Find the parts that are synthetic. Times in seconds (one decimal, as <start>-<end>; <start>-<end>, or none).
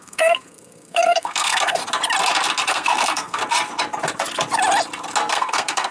0.0-1.8; 2.7-3.4; 5.3-5.9